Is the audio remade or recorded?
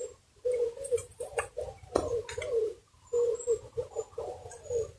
recorded